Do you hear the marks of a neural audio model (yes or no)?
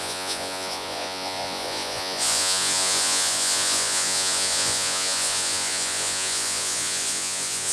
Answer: yes